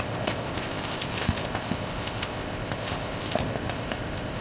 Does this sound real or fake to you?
fake